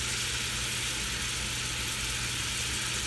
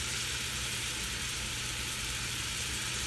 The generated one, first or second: second